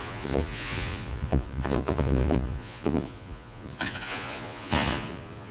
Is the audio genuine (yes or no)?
no